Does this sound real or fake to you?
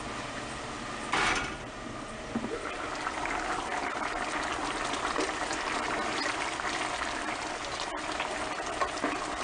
real